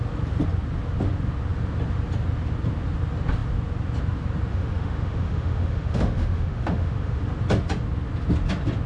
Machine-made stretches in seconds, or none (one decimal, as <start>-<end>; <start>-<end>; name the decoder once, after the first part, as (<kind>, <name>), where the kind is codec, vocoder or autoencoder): 4.5-7.2 (autoencoder, DAC-VAE)